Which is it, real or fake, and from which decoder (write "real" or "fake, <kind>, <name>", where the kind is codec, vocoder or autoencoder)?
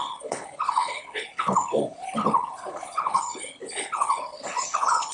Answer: fake, codec, HILCodec